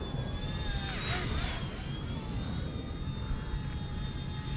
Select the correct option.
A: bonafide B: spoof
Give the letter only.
A